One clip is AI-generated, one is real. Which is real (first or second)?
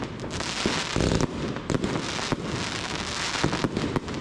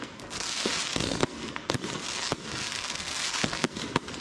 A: first